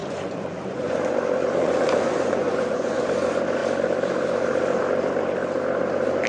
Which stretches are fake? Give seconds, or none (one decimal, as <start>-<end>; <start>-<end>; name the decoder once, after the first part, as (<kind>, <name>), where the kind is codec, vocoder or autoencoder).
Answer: 0.0-3.0 (vocoder, Vocos)